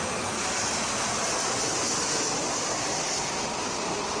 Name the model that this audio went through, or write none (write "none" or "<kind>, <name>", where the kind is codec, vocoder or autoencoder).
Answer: none